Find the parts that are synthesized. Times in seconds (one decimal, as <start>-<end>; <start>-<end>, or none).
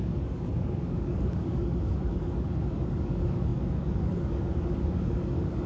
0.0-5.7